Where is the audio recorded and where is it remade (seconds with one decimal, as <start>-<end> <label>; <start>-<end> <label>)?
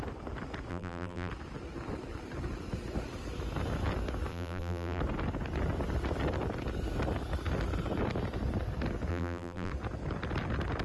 0.0-0.7 recorded; 0.7-1.3 remade; 1.3-4.3 recorded; 4.3-5.0 remade; 5.0-9.1 recorded; 9.1-9.7 remade; 9.7-10.8 recorded